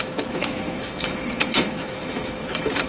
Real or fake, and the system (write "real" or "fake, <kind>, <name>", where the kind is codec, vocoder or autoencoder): fake, autoencoder, DAC-VAE